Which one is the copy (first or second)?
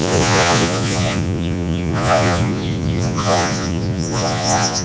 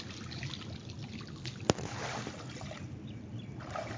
first